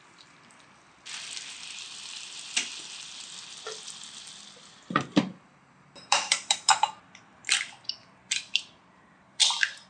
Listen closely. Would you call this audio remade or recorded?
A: remade